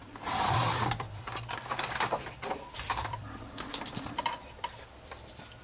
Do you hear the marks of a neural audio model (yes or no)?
yes